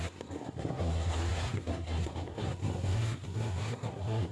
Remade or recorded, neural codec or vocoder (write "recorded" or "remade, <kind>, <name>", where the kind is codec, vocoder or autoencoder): remade, codec, SNAC